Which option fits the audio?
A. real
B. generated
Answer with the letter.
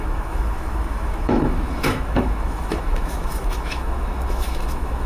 B